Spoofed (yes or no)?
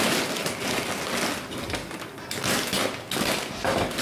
no